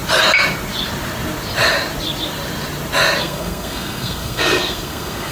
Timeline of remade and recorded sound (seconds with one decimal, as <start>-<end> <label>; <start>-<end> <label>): 0.0-3.2 recorded; 3.2-5.3 remade